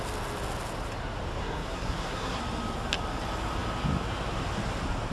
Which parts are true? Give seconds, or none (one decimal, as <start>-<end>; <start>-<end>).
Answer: 0.0-1.4; 2.4-5.1